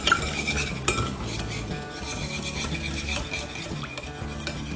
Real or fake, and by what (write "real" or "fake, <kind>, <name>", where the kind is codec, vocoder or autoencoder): real